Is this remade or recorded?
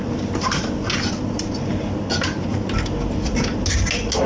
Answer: recorded